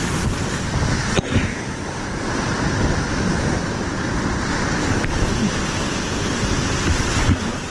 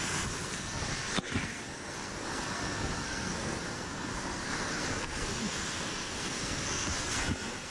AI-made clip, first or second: second